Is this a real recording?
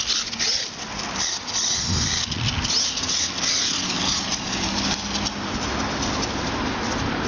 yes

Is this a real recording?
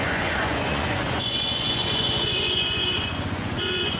no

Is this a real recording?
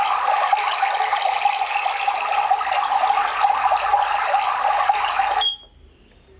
yes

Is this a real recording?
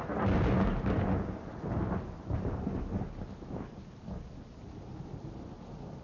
yes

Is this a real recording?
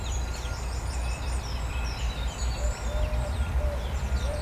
no